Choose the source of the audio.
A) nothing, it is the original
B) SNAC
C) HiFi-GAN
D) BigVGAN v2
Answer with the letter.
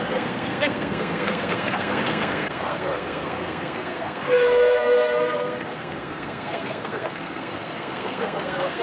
B